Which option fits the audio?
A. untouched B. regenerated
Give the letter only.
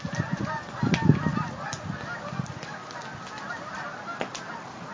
A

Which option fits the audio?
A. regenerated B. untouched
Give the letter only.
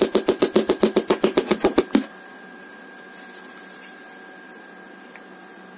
B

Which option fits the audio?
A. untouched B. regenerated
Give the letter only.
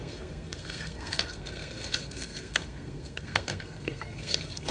B